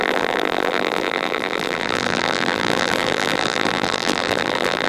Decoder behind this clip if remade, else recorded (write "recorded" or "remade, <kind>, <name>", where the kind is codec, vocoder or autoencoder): remade, vocoder, BigVGAN v2